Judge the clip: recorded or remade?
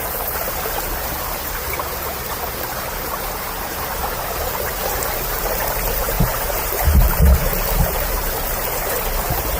recorded